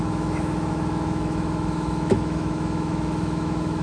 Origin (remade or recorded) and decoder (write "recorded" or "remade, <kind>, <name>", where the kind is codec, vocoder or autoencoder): remade, autoencoder, DAC-VAE